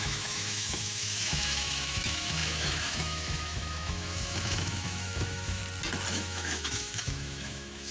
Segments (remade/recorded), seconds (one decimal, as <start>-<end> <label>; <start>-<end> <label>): 0.0-5.6 remade; 5.6-6.1 recorded; 6.1-7.9 remade